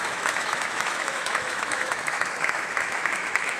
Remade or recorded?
remade